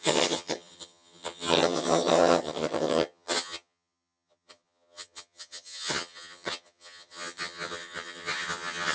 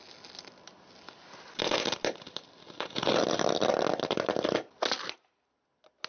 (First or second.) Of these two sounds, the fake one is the first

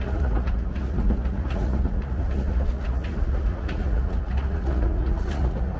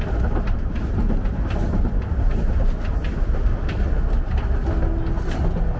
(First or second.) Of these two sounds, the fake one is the first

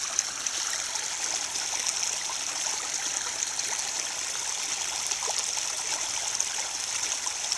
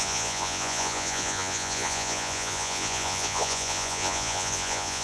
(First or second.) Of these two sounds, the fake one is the second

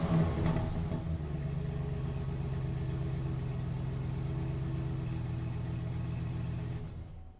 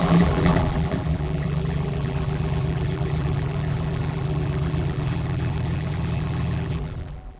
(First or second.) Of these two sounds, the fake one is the second